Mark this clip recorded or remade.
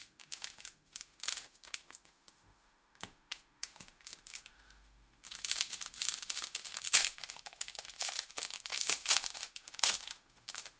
remade